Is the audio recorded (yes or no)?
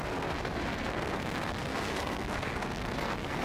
no